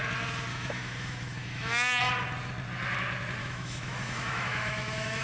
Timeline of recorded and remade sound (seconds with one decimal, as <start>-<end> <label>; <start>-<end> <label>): 0.0-0.5 recorded; 0.5-2.1 remade; 2.1-3.4 recorded; 3.4-5.2 remade